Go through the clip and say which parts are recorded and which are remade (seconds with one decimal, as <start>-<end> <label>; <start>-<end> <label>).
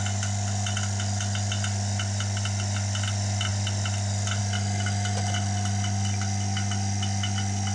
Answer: 0.0-7.7 recorded